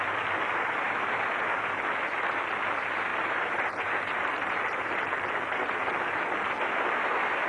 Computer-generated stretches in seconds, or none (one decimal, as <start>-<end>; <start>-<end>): 3.1-4.9